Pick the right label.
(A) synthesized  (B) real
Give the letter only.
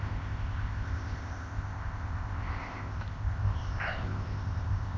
A